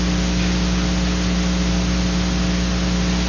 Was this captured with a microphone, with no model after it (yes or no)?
yes